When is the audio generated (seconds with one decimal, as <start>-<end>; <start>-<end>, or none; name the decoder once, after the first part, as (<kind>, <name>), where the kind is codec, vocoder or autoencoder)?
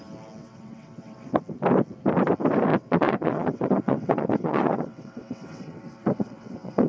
0.4-1.4 (vocoder, WaveNeXt); 2.7-6.9